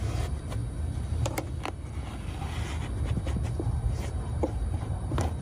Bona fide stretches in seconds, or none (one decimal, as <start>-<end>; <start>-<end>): 0.6-3.8

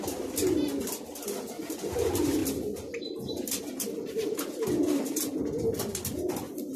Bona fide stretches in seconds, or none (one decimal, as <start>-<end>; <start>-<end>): 0.0-6.8

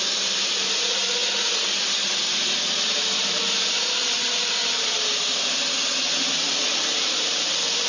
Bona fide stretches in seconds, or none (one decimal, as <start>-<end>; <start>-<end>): 1.2-2.9; 4.6-6.3

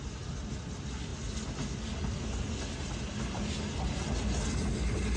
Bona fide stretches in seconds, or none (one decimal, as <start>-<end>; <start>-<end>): 0.0-5.2

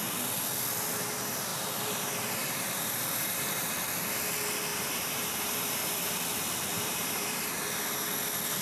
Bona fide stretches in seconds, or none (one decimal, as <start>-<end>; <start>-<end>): 0.0-1.5; 3.7-4.7; 6.2-6.7; 7.5-8.6